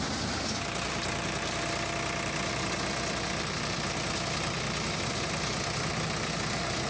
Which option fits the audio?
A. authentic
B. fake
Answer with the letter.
A